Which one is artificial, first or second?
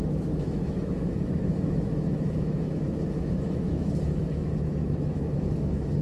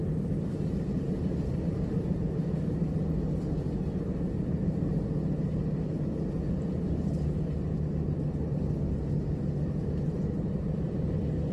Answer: first